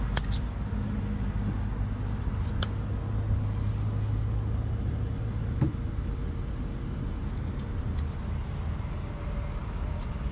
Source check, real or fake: real